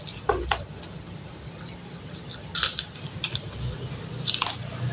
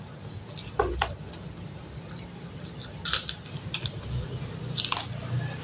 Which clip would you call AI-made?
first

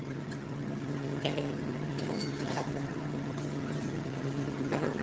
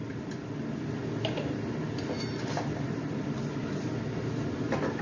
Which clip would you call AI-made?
first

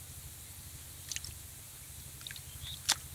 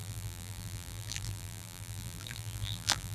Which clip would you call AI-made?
second